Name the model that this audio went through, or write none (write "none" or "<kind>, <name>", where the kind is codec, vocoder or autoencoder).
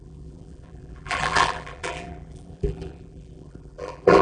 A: vocoder, BigVGAN v2